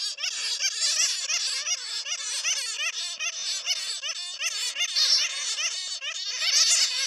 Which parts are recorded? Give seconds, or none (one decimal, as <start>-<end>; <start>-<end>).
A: 0.0-7.1